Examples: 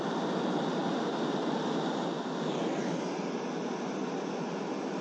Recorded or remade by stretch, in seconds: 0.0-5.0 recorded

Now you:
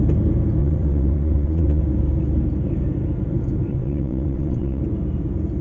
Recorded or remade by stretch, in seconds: 0.0-0.6 recorded; 0.6-1.8 remade; 1.8-3.7 recorded; 3.7-4.8 remade; 4.8-5.6 recorded

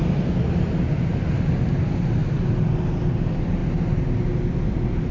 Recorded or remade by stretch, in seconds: 0.0-5.1 recorded